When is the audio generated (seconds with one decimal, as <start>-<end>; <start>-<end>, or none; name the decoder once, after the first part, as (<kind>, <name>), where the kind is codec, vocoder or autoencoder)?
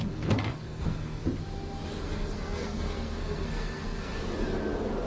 0.0-1.2 (codec, SNAC); 2.0-4.1